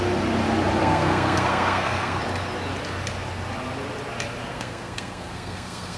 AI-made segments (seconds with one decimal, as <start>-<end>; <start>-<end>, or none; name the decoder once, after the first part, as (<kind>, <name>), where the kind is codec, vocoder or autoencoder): 0.8-2.2 (codec, SNAC); 4.5-6.0